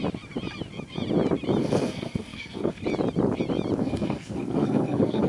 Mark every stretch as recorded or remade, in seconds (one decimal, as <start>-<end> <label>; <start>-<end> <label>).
0.0-1.6 recorded; 1.6-2.8 remade; 2.8-3.8 recorded; 3.8-5.3 remade